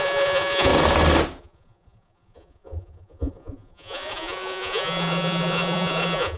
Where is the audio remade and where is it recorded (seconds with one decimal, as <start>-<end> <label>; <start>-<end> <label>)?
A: 0.0-0.7 remade; 0.7-1.4 recorded; 1.4-6.4 remade